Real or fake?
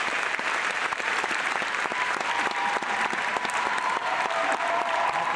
fake